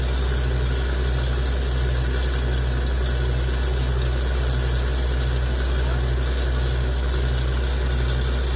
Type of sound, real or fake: real